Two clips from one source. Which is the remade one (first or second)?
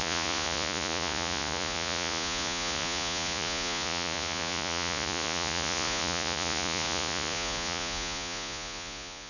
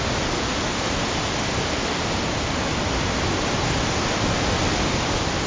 first